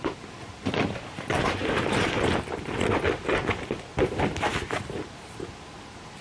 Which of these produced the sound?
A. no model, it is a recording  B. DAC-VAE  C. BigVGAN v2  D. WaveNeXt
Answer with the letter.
A